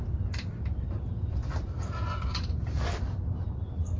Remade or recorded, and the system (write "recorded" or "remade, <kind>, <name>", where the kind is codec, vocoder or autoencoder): recorded